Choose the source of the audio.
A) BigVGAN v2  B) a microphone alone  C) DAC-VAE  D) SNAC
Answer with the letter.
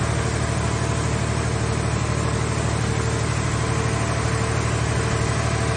B